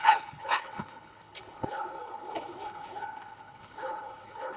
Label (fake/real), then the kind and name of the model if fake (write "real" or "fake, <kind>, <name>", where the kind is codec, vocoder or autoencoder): fake, codec, HILCodec